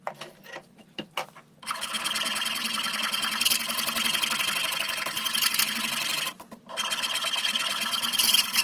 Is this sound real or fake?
real